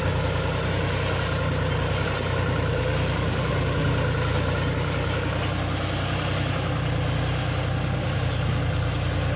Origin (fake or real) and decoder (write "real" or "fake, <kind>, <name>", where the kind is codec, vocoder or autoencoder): real